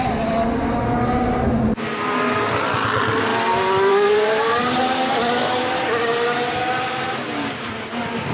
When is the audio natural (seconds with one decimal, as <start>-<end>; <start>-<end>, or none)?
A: 0.0-8.3